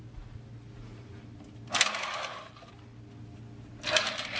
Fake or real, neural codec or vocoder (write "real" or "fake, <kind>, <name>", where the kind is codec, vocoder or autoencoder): real